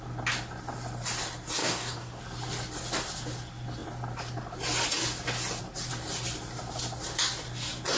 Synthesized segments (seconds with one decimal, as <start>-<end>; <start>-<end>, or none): 1.6-2.2